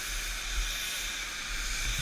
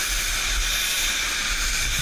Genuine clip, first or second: first